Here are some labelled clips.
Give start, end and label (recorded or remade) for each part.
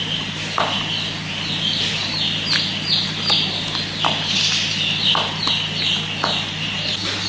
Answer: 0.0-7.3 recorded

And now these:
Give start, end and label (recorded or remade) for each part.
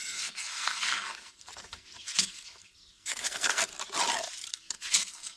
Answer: 0.0-3.7 remade; 3.7-4.5 recorded; 4.5-5.4 remade